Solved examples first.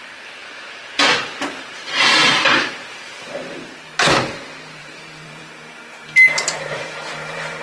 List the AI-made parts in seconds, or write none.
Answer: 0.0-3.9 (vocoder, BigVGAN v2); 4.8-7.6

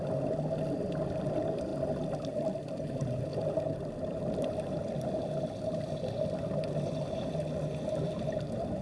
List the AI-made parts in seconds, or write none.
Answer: 0.0-1.7 (vocoder, BigVGAN v2); 2.8-8.8

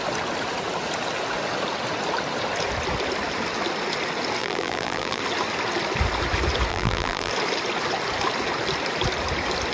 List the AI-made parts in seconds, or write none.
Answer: 4.4-5.2 (vocoder, BigVGAN v2); 6.7-7.3

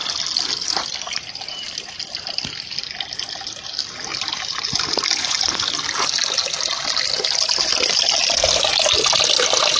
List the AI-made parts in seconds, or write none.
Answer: none

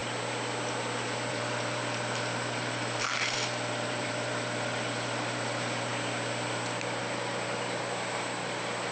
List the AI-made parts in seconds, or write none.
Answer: 1.3-5.9 (vocoder, BigVGAN v2); 7.0-8.9

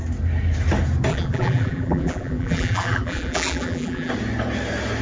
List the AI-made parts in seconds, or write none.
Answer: 1.1-4.1 (vocoder, BigVGAN v2)